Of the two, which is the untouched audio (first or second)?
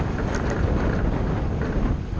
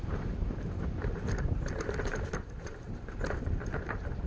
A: first